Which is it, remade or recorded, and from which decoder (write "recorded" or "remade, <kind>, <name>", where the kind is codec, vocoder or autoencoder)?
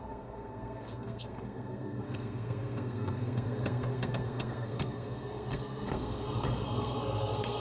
remade, codec, SNAC